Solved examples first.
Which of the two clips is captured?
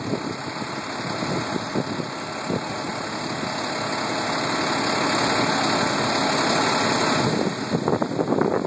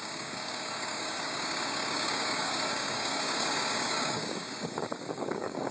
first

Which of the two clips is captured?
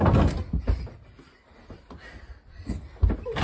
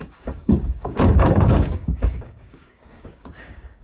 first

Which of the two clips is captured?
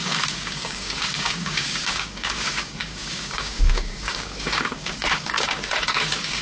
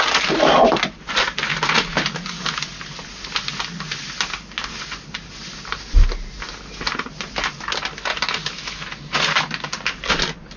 second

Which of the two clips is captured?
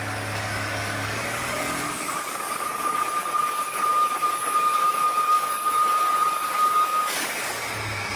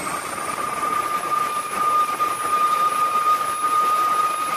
second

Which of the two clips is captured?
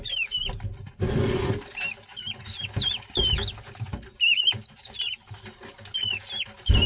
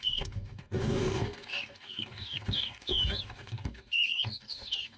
first